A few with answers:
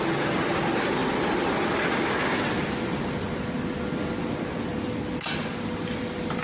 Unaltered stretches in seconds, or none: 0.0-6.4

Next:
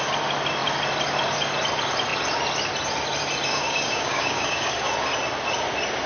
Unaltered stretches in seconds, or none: 0.0-3.5; 4.9-6.1

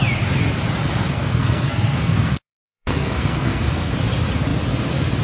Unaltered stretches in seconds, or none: 0.0-0.8; 3.9-5.2

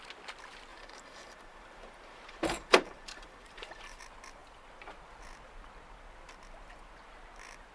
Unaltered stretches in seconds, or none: 0.0-0.7; 4.0-7.7

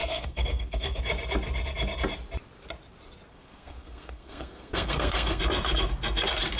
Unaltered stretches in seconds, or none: 1.0-3.3; 5.4-6.6

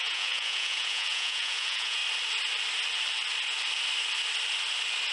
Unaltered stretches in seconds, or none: 2.0-5.1

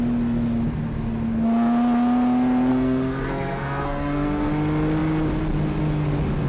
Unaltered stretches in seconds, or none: 0.0-2.7; 4.5-6.5